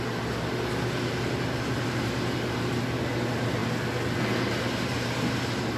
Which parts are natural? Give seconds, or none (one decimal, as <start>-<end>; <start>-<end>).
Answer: 0.0-5.8